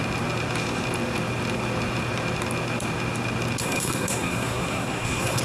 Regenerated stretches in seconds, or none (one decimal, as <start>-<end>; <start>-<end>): 3.6-5.4